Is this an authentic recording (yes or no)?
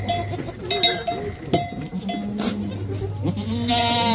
yes